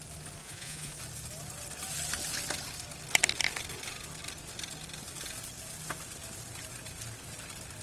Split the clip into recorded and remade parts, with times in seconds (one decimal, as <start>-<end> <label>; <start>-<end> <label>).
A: 0.0-0.4 recorded; 0.4-0.9 remade; 0.9-7.8 recorded